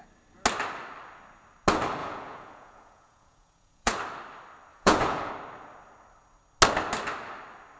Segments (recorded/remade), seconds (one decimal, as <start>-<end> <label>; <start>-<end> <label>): 0.0-2.0 recorded; 2.0-4.0 remade; 4.0-4.7 recorded; 4.7-5.3 remade; 5.3-7.8 recorded